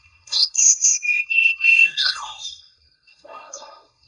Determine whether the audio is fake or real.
fake